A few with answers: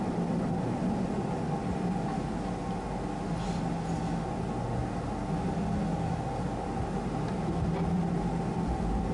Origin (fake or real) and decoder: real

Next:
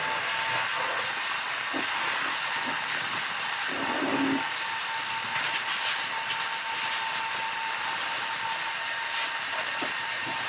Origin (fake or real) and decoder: real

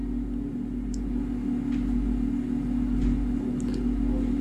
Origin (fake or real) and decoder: real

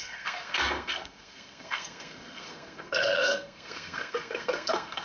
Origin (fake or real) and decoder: fake, codec, SNAC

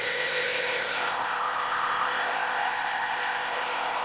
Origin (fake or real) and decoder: fake, codec, ZipCodec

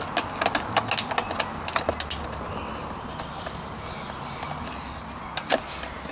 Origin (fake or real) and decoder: real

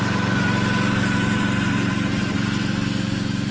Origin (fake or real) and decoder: real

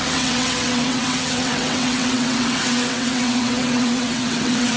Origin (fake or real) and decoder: fake, vocoder, WaveNeXt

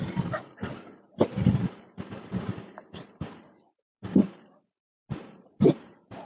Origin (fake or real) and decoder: fake, vocoder, BigVGAN v2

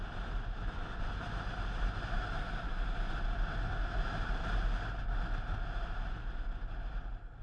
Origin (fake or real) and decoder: real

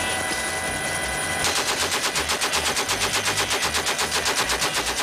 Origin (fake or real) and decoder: real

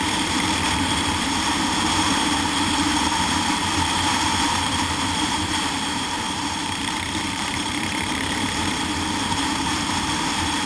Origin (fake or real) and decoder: fake, vocoder, BigVGAN v2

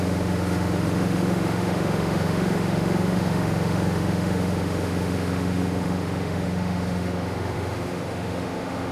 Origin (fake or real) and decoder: fake, autoencoder, DAC-VAE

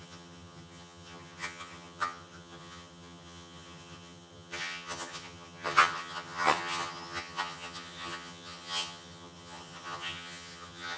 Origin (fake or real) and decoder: fake, vocoder, HiFi-GAN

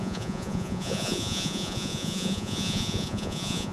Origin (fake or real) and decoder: fake, vocoder, Vocos